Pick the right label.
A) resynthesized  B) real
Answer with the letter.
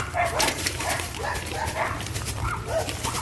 A